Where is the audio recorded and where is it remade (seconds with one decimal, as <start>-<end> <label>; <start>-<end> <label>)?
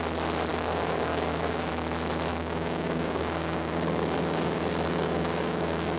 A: 0.0-0.5 recorded; 0.5-1.7 remade; 1.7-2.3 recorded; 2.3-6.0 remade